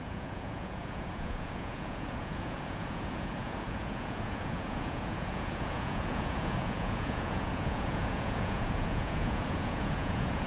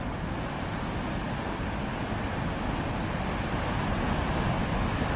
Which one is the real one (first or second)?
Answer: second